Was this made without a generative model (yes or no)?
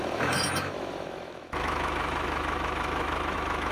no